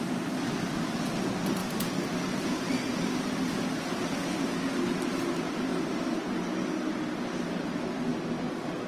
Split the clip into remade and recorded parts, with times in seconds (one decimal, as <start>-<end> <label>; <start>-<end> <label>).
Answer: 0.0-8.9 recorded